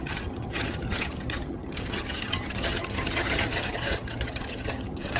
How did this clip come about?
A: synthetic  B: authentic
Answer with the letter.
A